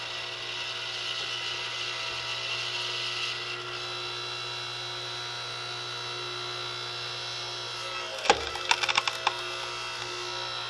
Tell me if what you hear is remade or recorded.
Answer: recorded